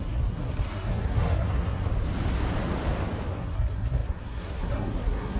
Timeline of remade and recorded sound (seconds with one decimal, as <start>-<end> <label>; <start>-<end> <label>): 0.0-1.9 remade; 1.9-3.3 recorded; 3.3-5.4 remade